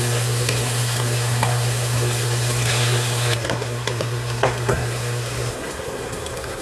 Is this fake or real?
fake